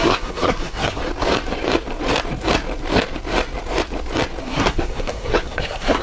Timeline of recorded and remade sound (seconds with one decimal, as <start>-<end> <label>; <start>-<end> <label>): 0.0-1.0 remade; 1.0-4.4 recorded; 4.4-6.0 remade